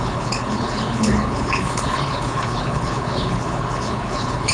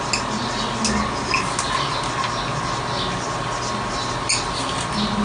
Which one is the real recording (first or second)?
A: second